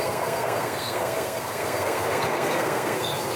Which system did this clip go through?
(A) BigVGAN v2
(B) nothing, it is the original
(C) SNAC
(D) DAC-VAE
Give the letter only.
C